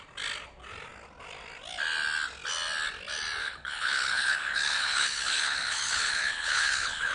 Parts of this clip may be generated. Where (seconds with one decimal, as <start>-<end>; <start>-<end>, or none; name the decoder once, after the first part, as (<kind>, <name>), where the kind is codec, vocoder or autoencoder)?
3.4-7.1 (codec, HILCodec)